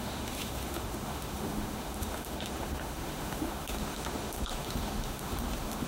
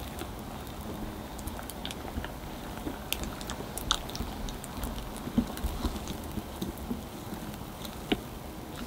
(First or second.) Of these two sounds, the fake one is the first